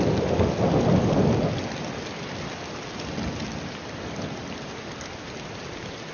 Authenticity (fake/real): real